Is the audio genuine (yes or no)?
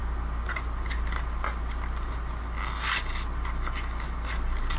yes